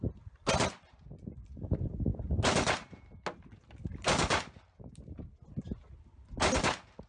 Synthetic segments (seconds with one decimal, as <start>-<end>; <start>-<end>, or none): none